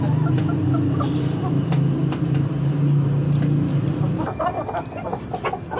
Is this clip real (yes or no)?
yes